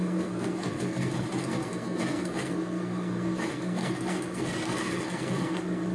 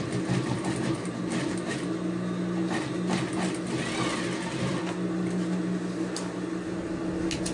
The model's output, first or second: first